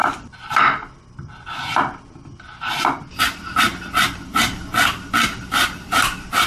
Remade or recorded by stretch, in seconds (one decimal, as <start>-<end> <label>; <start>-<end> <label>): 0.0-6.5 recorded